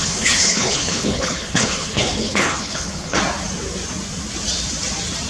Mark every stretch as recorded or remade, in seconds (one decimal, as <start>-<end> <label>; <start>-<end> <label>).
0.0-3.2 remade; 3.2-5.3 recorded